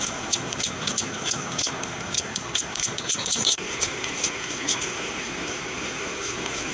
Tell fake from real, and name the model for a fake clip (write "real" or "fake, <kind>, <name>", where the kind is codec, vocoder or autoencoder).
fake, codec, SNAC